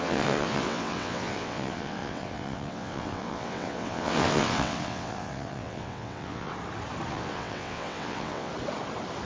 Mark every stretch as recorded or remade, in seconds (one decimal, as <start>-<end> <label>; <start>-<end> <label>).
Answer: 0.0-6.5 remade; 6.5-7.1 recorded; 7.1-8.5 remade; 8.5-9.3 recorded